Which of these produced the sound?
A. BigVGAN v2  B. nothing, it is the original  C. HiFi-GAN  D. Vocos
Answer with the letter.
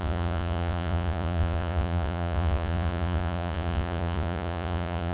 D